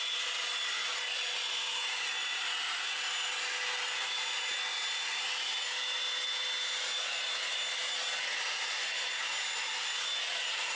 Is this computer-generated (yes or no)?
no